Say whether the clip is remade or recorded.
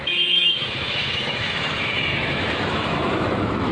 remade